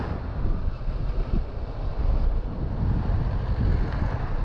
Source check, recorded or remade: recorded